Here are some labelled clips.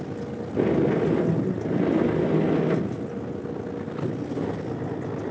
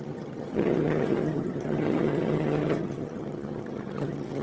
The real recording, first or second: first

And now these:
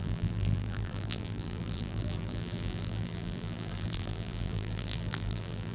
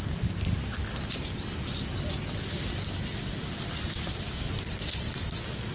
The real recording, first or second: second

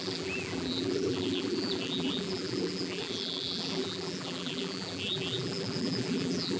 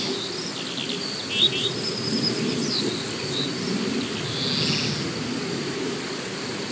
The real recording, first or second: second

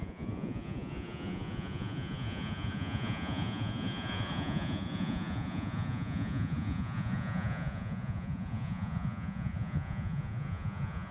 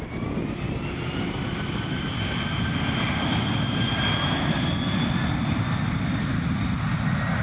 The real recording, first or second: second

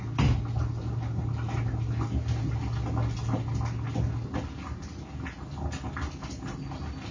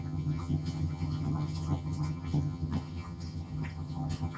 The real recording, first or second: first